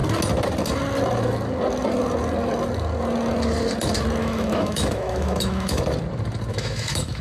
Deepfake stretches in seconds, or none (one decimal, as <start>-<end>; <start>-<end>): 4.2-5.8; 6.5-7.2